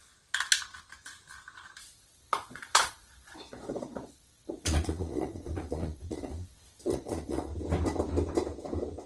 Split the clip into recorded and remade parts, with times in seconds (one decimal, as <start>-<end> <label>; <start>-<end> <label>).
0.0-1.8 recorded; 1.8-7.5 remade; 7.5-9.1 recorded